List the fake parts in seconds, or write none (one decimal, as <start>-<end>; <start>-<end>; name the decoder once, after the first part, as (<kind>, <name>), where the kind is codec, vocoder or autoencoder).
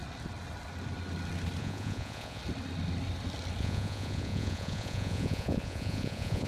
1.6-2.4 (vocoder, Vocos); 3.6-6.5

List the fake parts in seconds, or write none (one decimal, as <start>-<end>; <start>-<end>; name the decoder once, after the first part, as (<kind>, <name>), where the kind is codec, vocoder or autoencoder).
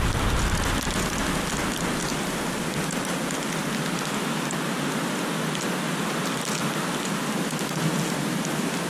1.2-3.1 (vocoder, BigVGAN v2)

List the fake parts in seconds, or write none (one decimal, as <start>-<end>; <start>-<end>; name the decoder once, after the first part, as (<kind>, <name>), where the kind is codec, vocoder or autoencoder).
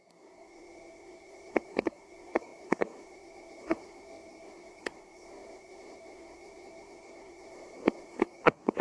0.0-8.8 (codec, SNAC)